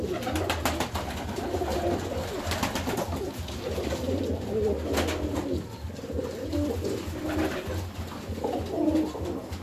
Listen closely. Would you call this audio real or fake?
real